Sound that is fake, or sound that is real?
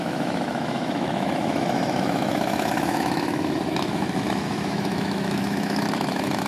fake